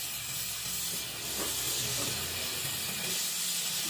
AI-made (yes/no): no